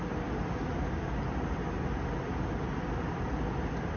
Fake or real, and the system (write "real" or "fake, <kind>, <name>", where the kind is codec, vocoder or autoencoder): real